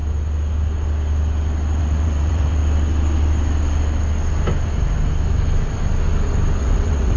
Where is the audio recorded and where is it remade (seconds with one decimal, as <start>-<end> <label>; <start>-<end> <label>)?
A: 0.0-1.8 recorded; 1.8-2.6 remade; 2.6-6.6 recorded; 6.6-7.2 remade